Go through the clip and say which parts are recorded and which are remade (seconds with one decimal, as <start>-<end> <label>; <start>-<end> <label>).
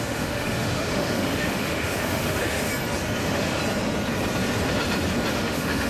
0.0-2.7 remade; 2.7-3.2 recorded; 3.2-3.6 remade; 3.6-5.3 recorded; 5.3-5.9 remade